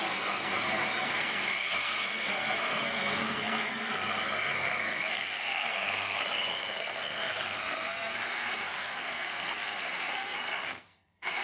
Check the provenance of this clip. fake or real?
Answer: fake